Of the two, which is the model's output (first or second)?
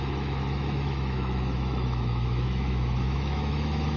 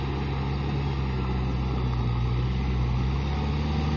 first